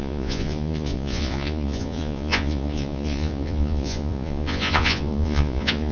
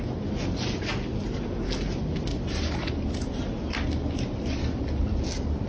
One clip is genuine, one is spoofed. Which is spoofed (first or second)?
first